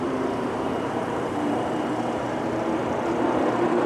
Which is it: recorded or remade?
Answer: remade